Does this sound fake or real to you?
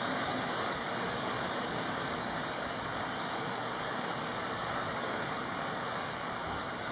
fake